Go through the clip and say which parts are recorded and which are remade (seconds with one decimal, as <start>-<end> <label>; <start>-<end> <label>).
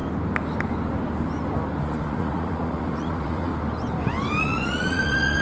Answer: 0.0-1.8 recorded; 1.8-3.5 remade; 3.5-4.4 recorded; 4.4-5.4 remade